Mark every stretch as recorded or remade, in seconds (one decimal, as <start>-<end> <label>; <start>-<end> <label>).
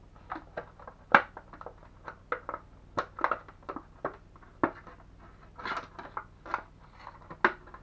0.0-7.8 recorded